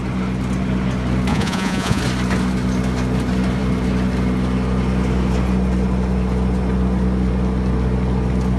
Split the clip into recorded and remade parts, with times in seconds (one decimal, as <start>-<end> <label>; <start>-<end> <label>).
0.0-1.3 recorded; 1.3-2.0 remade; 2.0-8.6 recorded